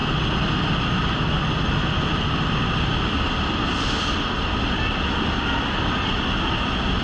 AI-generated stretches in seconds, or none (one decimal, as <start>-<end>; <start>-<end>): none